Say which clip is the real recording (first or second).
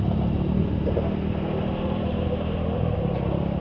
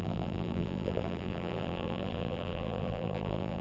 first